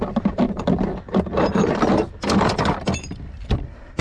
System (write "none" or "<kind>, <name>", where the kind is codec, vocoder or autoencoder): none